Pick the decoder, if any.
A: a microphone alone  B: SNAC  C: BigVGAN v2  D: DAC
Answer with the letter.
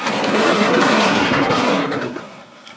B